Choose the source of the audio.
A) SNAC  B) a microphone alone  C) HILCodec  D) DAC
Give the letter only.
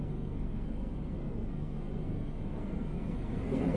A